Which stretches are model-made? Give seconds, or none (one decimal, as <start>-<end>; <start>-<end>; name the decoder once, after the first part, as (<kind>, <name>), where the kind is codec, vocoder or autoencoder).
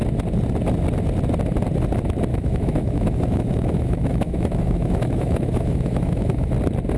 2.3-6.5 (autoencoder, DAC-VAE)